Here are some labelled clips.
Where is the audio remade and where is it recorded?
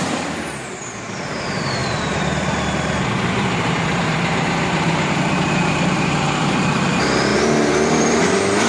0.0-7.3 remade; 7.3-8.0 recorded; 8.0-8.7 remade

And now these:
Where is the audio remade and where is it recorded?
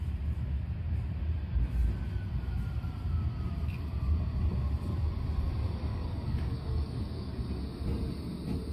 0.0-5.9 recorded; 5.9-7.4 remade; 7.4-8.7 recorded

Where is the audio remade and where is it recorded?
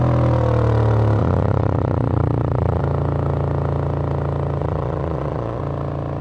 0.0-1.2 recorded; 1.2-2.8 remade; 2.8-4.6 recorded; 4.6-5.6 remade; 5.6-6.2 recorded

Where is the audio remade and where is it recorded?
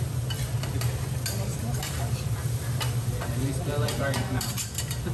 0.0-1.5 recorded; 1.5-4.6 remade; 4.6-5.1 recorded